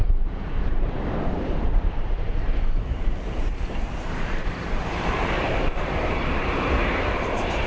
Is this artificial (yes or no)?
yes